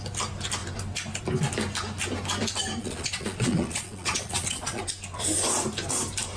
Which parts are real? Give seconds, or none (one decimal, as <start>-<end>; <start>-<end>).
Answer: 0.0-2.8; 4.8-6.4